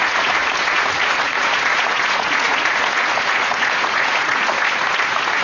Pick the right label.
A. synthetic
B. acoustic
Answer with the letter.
A